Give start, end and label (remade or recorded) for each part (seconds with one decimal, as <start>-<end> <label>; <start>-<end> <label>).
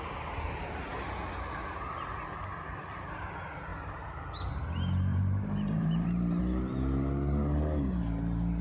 0.0-5.1 recorded; 5.1-6.4 remade; 6.4-8.6 recorded